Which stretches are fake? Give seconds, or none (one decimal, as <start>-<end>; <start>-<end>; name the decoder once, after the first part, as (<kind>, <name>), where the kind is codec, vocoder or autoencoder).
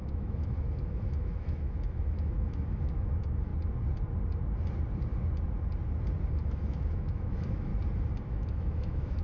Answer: 0.0-3.5 (autoencoder, DAC-VAE); 6.3-7.7; 8.3-9.2